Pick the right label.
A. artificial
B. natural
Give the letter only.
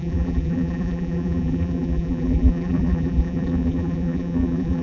A